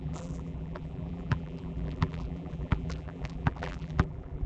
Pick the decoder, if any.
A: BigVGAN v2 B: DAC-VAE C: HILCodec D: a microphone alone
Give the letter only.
A